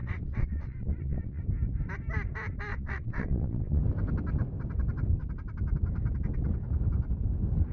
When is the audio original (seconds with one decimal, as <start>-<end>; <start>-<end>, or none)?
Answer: 1.4-2.7; 3.8-7.7